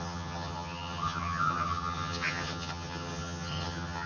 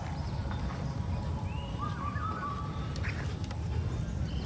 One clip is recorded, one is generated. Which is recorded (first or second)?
second